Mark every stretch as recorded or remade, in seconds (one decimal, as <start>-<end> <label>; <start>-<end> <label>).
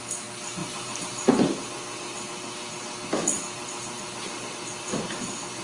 0.0-0.6 recorded; 0.6-1.3 remade; 1.3-3.6 recorded; 3.6-4.5 remade; 4.5-5.6 recorded